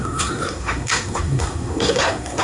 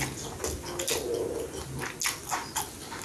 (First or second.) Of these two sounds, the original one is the second